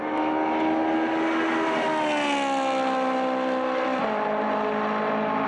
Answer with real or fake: real